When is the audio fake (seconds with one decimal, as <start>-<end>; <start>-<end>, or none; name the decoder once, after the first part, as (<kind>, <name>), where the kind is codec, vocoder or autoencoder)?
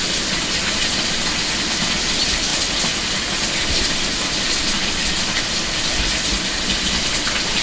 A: none